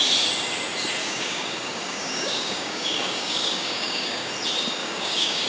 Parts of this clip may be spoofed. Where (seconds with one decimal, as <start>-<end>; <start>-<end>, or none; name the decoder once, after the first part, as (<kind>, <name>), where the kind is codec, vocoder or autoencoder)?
1.0-4.3 (codec, DAC); 4.8-5.5

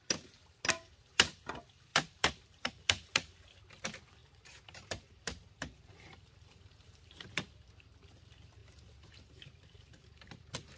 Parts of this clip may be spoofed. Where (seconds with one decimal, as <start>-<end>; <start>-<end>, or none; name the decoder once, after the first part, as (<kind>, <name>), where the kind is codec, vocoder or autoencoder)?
1.9-3.5 (vocoder, BigVGAN v2); 4.2-7.3; 8.6-10.3

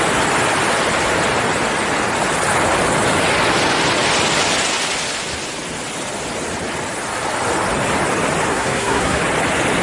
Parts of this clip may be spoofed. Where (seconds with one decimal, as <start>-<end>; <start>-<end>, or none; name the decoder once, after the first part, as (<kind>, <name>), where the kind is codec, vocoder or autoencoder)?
8.5-9.2 (codec, SNAC)

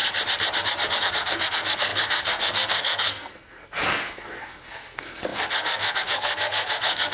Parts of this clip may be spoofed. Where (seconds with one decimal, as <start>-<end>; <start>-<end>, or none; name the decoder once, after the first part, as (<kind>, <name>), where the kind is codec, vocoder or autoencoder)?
1.0-7.1 (codec, SNAC)

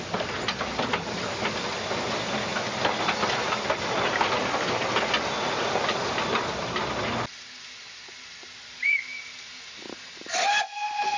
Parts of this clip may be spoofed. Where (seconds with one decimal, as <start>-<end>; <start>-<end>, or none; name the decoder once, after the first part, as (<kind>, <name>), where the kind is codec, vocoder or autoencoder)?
none

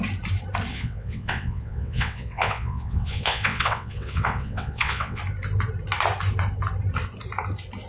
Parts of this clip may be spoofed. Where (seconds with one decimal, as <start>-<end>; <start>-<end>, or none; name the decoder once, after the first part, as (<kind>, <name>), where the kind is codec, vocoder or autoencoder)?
0.7-5.2 (vocoder, WaveNeXt)